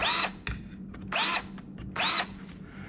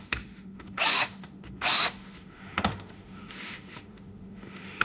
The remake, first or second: second